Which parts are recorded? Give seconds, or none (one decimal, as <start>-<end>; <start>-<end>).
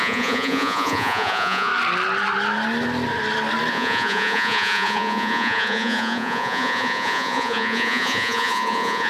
1.7-3.7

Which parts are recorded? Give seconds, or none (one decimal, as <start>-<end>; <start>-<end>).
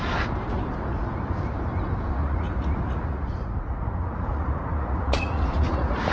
0.0-2.2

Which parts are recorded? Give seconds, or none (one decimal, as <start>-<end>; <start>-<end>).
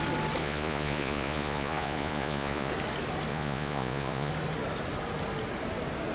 0.0-0.4; 2.7-3.3; 4.3-6.1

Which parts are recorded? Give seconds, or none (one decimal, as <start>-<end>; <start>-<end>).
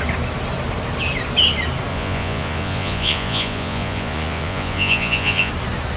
0.0-1.9; 5.5-6.0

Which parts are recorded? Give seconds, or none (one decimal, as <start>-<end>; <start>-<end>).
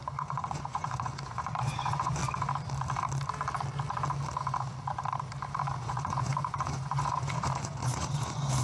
2.2-5.8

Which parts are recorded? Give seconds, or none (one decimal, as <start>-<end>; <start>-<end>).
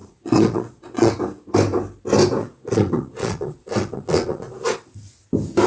1.1-2.4; 4.5-5.7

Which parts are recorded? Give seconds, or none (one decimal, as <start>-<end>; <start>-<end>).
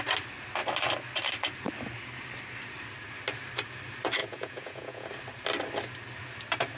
0.0-4.2; 5.1-6.8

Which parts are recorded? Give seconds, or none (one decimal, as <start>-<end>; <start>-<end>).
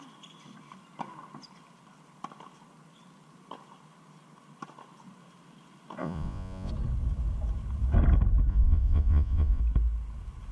0.0-6.0; 6.7-8.5; 9.6-10.5